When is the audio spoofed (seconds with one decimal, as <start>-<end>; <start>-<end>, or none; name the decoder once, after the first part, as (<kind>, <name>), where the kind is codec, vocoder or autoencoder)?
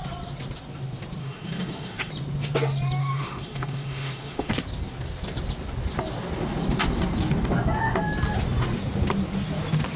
1.2-2.1 (autoencoder, DAC-VAE); 3.0-4.5